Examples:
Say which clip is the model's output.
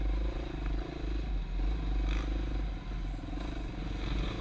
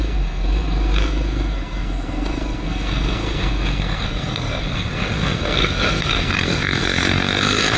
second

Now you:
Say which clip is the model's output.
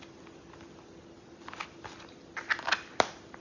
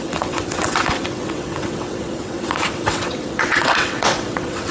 second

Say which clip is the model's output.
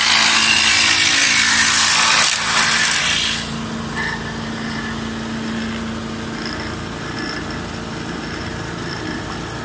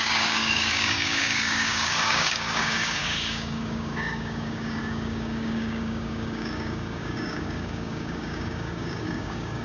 second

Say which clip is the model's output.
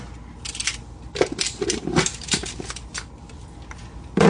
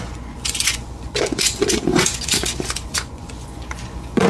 second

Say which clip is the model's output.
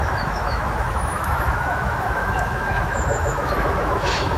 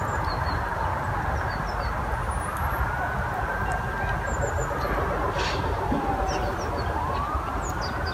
first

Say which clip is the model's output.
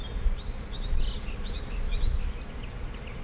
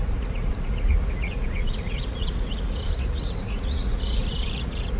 second